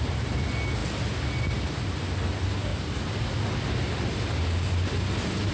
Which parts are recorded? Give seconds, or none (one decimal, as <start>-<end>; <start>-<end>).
0.0-5.5

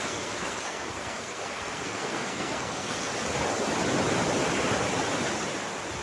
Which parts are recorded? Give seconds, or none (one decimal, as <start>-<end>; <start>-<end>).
3.1-6.0

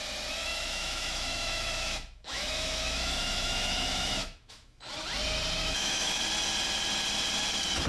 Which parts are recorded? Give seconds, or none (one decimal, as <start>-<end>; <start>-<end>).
0.0-0.4; 4.8-5.6; 6.2-7.9

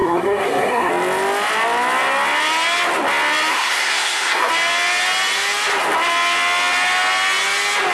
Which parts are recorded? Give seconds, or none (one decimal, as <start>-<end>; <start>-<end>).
0.9-3.5; 4.5-7.9

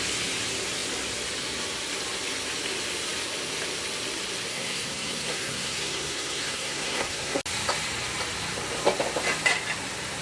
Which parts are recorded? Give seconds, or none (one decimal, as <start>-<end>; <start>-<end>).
0.0-4.5; 7.4-10.2

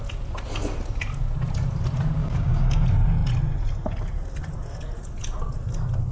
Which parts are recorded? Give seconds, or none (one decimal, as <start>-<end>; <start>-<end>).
0.0-2.2; 2.8-6.1

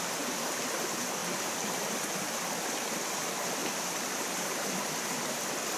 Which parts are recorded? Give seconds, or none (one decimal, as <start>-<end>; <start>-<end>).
0.0-3.6; 4.5-5.8

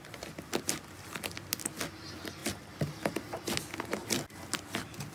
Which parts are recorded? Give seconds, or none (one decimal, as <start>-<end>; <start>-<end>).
0.0-5.1